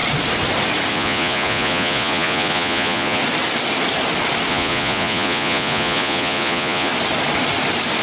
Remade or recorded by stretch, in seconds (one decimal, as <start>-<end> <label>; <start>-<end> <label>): 0.0-0.9 recorded; 0.9-3.2 remade; 3.2-4.5 recorded; 4.5-6.9 remade; 6.9-8.0 recorded